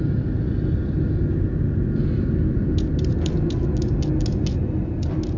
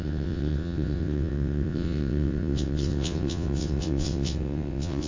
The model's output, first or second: second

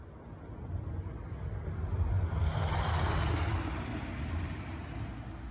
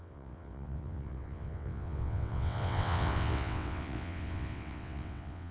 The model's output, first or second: second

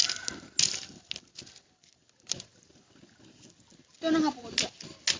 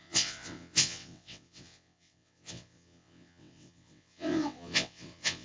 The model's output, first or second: second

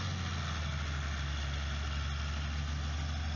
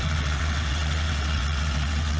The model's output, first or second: second